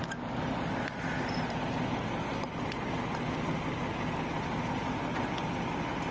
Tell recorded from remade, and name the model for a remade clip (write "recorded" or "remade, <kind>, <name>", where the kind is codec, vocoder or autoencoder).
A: recorded